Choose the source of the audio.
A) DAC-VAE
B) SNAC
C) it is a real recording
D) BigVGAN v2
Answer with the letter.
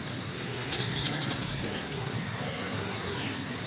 B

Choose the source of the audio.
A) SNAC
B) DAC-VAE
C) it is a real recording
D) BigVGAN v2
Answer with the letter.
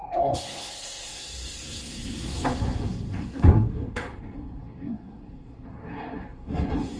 A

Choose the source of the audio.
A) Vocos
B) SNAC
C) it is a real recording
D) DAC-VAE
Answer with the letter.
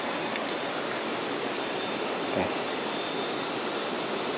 C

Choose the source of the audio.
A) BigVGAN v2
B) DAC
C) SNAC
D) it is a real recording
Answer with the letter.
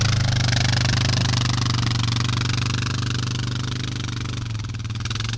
D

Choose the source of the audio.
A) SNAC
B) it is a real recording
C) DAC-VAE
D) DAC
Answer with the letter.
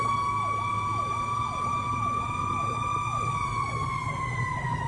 B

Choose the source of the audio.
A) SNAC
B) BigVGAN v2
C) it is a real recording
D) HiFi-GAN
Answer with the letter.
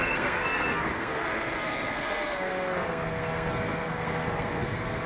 A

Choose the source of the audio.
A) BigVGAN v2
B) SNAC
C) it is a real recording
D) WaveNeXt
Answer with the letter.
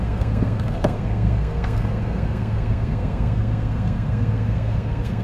B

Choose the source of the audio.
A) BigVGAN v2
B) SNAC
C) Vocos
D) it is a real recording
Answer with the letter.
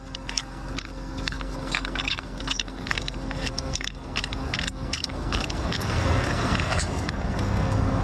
B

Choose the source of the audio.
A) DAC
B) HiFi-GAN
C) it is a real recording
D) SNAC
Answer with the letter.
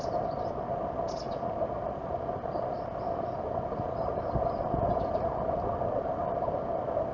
C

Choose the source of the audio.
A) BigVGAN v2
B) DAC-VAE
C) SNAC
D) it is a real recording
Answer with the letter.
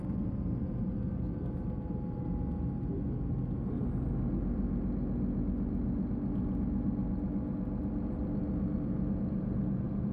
D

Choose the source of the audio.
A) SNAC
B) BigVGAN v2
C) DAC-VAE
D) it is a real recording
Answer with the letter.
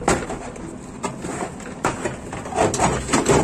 D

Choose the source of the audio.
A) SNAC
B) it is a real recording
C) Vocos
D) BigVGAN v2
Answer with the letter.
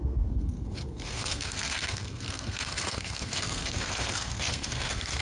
A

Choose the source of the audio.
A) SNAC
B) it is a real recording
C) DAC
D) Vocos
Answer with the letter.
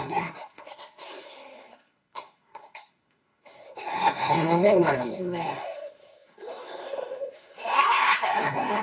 A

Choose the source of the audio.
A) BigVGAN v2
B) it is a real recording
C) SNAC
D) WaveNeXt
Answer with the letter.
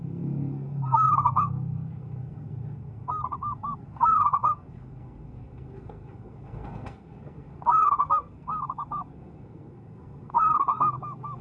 C